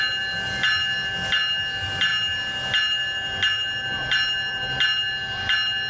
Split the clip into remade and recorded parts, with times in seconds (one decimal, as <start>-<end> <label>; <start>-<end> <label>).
0.0-5.9 recorded